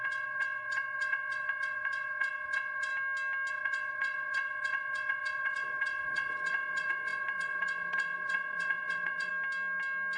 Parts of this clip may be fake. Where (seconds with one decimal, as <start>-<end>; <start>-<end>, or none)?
0.0-2.9; 3.5-9.3